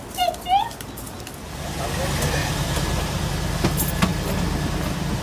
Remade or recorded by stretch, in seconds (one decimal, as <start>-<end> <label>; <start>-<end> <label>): 0.0-2.4 recorded; 2.4-3.3 remade; 3.3-5.2 recorded